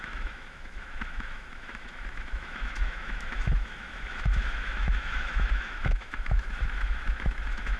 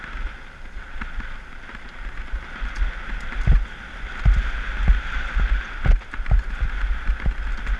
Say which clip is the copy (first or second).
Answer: first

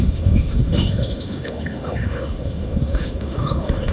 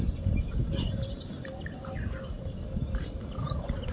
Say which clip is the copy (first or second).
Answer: first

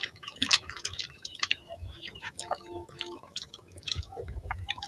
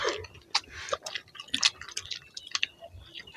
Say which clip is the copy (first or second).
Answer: first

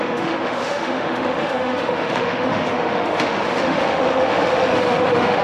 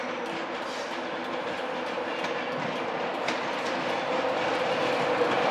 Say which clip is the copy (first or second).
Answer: first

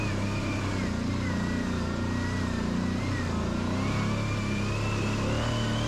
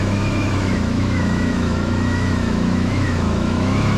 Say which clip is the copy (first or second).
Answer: second